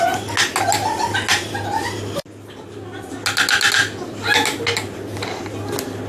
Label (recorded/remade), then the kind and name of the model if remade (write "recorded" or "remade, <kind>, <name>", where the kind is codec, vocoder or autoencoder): recorded